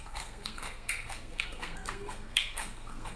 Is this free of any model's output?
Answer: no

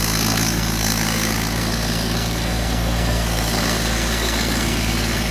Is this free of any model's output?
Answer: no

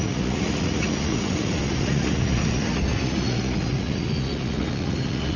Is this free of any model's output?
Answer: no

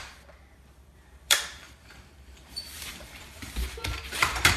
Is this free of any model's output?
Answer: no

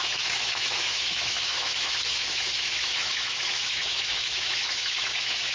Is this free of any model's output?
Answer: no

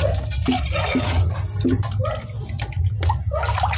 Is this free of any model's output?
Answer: yes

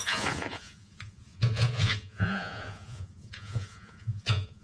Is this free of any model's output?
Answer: no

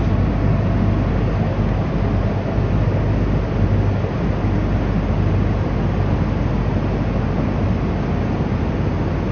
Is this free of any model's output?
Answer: yes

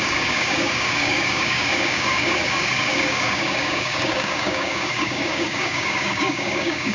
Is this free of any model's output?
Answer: no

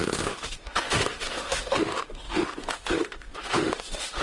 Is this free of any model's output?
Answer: no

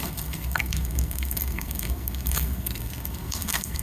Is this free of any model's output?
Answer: no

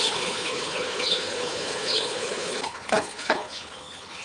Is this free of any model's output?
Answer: no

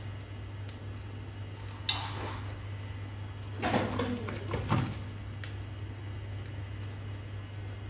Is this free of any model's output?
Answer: yes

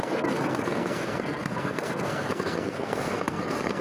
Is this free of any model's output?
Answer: no